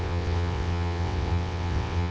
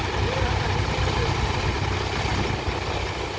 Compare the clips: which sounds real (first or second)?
second